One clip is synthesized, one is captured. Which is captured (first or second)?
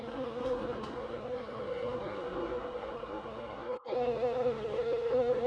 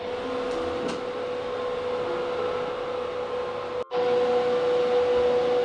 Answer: second